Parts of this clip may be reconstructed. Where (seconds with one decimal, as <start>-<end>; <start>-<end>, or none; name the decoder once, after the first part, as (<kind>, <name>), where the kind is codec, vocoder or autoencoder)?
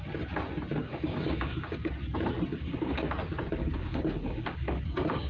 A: 0.8-1.9 (codec, DAC); 2.5-3.1; 3.6-5.3